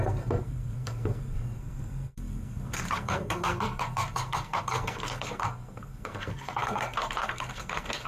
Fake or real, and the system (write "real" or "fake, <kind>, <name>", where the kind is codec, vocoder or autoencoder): fake, codec, SNAC